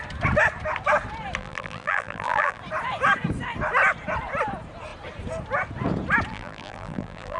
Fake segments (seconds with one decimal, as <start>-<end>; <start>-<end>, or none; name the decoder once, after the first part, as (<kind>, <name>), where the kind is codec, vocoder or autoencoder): 1.4-2.6 (vocoder, BigVGAN v2); 6.3-7.4